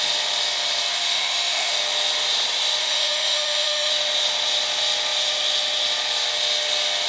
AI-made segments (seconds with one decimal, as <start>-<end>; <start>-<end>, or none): 1.0-1.7; 2.8-3.9